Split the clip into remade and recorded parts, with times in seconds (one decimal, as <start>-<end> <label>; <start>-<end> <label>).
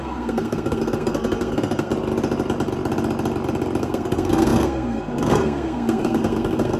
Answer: 0.0-1.9 remade; 1.9-3.8 recorded; 3.8-6.8 remade